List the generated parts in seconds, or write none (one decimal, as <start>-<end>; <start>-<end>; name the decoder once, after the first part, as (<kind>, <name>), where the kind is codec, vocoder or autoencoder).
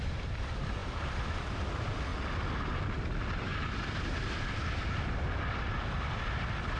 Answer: 0.0-2.1 (vocoder, BigVGAN v2); 4.4-6.8